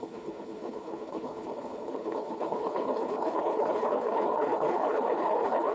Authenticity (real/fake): fake